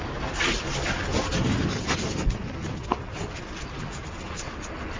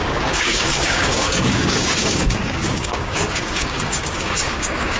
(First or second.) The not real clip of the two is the second